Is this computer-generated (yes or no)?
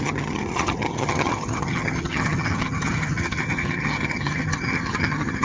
yes